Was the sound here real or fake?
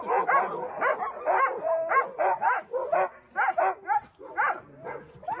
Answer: real